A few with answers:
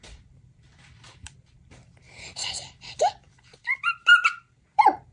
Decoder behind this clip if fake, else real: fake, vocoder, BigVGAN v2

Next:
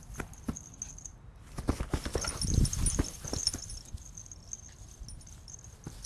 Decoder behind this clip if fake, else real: real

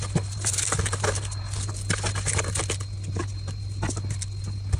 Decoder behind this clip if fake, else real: real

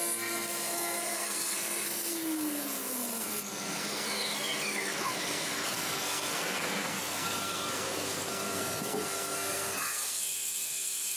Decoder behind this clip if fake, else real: fake, codec, SNAC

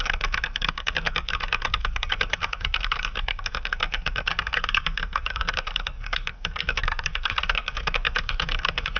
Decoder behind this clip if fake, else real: fake, codec, SNAC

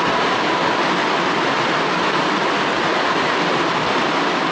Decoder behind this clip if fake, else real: real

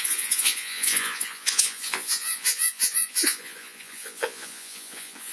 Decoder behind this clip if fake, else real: fake, vocoder, Vocos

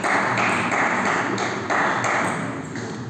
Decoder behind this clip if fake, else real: real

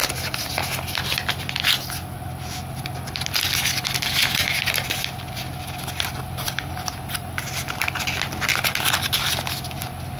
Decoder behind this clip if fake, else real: real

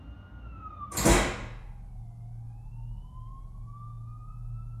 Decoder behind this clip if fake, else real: real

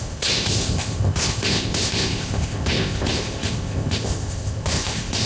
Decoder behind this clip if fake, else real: fake, codec, ZipCodec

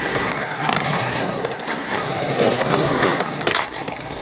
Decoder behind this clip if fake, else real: fake, codec, SNAC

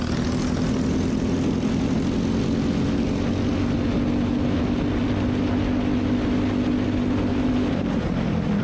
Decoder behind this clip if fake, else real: real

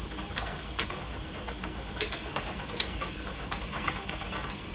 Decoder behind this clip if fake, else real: fake, codec, SNAC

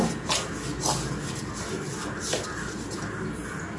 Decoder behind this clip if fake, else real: real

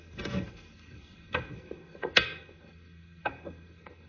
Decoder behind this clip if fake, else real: fake, codec, SNAC